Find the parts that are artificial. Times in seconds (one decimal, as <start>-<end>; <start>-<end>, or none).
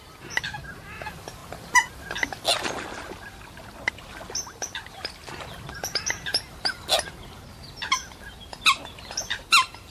none